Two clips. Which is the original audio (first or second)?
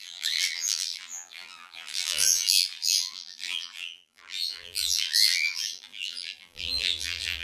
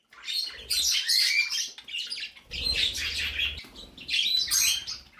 second